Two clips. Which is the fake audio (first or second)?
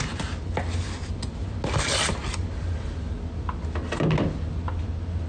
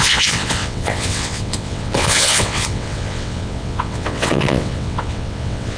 second